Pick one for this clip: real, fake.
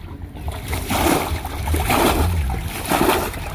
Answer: real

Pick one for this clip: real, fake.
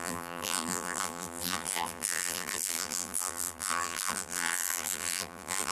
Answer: fake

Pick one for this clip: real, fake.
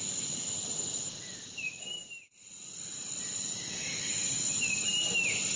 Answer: fake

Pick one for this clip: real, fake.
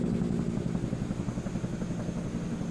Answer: real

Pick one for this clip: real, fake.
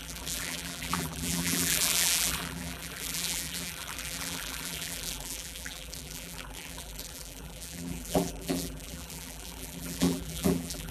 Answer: fake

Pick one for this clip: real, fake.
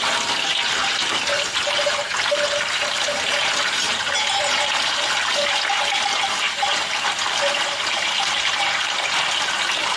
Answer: fake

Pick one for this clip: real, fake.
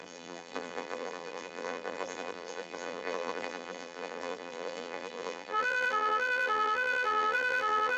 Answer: fake